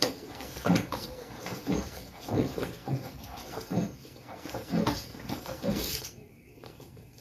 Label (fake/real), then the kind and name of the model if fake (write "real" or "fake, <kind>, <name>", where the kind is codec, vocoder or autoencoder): fake, codec, SNAC